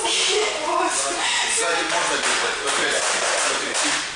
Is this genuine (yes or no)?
yes